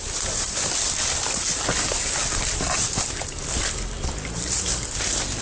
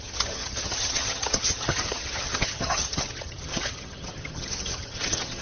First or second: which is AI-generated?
second